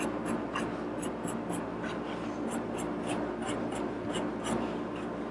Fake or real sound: real